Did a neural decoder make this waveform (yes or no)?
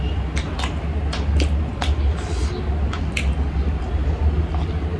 no